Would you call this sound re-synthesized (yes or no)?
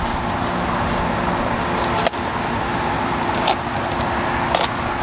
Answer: no